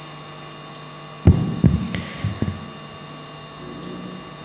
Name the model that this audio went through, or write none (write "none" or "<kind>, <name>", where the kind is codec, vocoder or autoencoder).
none